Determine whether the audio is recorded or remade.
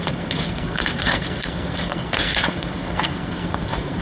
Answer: remade